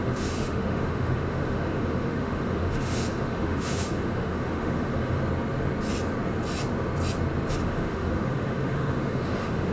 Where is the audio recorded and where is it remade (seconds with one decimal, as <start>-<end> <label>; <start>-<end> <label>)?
0.0-5.2 remade; 5.2-7.5 recorded; 7.5-9.7 remade